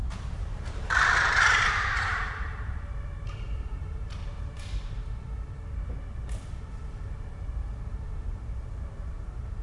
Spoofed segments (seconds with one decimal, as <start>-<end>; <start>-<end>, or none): 0.0-5.0; 6.6-9.6